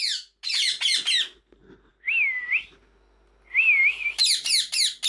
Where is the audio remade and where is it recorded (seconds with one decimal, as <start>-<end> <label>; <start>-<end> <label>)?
0.0-5.1 recorded